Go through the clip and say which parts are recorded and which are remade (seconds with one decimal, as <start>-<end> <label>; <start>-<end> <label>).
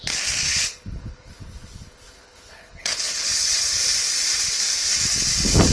0.0-0.5 recorded; 0.5-3.8 remade; 3.8-5.7 recorded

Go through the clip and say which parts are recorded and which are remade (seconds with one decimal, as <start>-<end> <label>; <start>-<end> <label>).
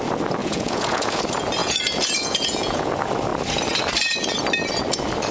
0.0-0.4 recorded; 0.4-1.2 remade; 1.2-1.6 recorded; 1.6-2.9 remade; 2.9-5.3 recorded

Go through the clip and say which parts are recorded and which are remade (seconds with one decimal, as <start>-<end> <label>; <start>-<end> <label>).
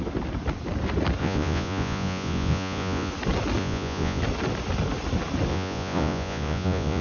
0.0-1.2 recorded; 1.2-3.1 remade; 3.1-3.6 recorded; 3.6-4.2 remade; 4.2-5.5 recorded; 5.5-7.0 remade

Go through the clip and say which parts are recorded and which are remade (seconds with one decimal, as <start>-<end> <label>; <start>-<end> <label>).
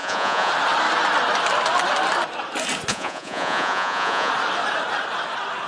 0.0-0.5 remade; 0.5-2.9 recorded; 2.9-4.3 remade; 4.3-5.7 recorded